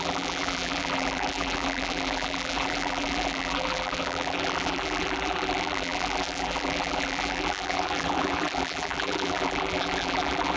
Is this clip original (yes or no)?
no